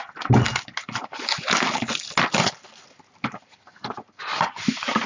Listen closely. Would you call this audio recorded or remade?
recorded